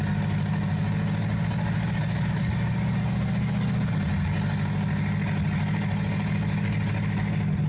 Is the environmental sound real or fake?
real